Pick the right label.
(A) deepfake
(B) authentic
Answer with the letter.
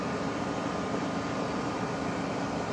A